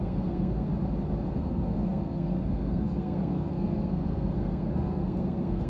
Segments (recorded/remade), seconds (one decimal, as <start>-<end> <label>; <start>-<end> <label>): 0.0-0.7 remade; 0.7-1.4 recorded; 1.4-5.7 remade